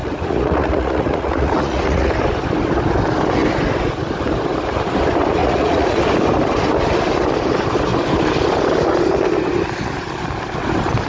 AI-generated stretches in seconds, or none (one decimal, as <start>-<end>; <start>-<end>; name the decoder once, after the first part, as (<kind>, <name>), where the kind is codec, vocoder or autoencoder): 0.0-2.1 (vocoder, Vocos); 5.4-6.0